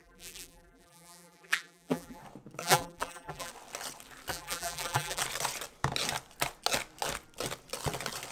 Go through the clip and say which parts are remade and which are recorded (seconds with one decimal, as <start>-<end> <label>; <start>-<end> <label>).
0.0-2.2 remade; 2.2-2.6 recorded; 2.6-3.5 remade; 3.5-4.3 recorded; 4.3-5.2 remade; 5.2-8.3 recorded